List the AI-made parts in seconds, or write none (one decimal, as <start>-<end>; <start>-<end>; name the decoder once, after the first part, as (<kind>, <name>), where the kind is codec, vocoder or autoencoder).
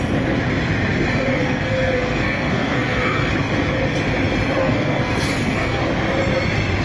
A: 1.3-3.3 (codec, SNAC); 4.6-5.8